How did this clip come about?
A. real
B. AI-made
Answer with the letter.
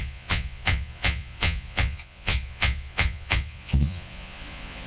B